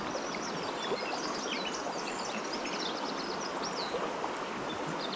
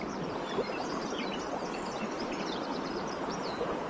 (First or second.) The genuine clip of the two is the first